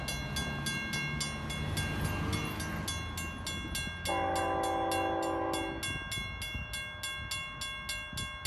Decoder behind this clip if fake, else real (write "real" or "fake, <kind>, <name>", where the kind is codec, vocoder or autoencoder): real